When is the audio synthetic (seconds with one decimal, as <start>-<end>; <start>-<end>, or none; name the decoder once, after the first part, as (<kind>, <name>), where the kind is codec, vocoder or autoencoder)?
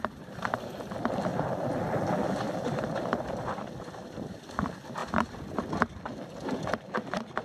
none